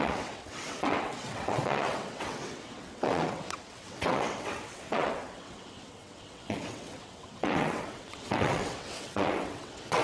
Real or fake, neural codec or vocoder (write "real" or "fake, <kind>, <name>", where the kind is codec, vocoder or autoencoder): fake, vocoder, WaveNeXt